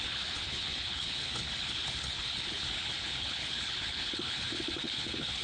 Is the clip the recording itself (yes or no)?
no